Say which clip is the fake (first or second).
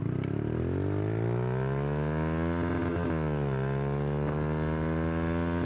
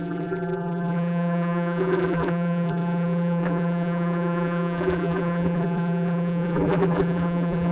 second